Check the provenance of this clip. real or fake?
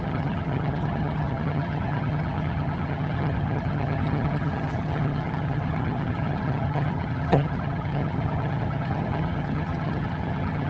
fake